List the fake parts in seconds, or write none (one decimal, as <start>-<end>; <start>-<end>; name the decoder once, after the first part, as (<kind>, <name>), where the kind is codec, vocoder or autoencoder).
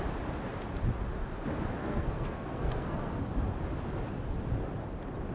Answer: 1.8-3.2 (codec, SNAC)